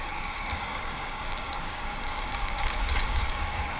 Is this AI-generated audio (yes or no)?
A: yes